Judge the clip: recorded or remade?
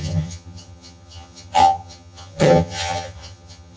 remade